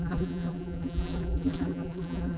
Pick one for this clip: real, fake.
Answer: fake